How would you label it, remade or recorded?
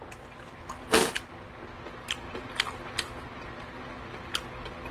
recorded